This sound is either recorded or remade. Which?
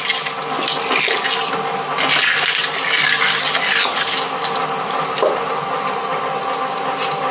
recorded